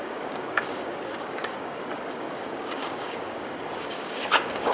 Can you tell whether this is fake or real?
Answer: fake